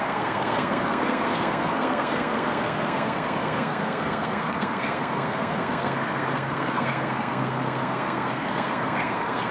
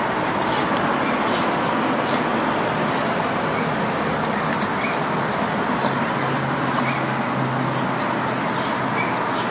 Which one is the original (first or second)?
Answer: second